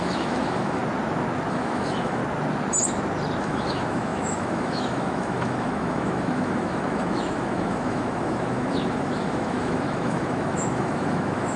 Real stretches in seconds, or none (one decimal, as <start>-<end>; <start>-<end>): 0.8-1.5; 2.2-3.4